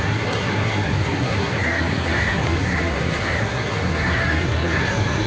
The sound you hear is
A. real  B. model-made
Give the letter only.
B